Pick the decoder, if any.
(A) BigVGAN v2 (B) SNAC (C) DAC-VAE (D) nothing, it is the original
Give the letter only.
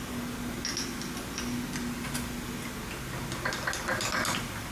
D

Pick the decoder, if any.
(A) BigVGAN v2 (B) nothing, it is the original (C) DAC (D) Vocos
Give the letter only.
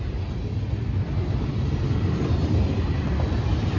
B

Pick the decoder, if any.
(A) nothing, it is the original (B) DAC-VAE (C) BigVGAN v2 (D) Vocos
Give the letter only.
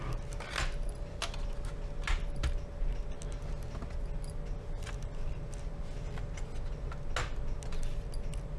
A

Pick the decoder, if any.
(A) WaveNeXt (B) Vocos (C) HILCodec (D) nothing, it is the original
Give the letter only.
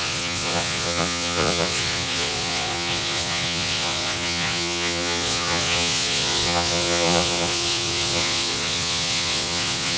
B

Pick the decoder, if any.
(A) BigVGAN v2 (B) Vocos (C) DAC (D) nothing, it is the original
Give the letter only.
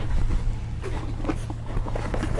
D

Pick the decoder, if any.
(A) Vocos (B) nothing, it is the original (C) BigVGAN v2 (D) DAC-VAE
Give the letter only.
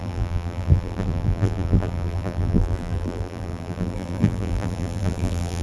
C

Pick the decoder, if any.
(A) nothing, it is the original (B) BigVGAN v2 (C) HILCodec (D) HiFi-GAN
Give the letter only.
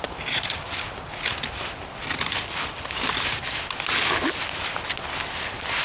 A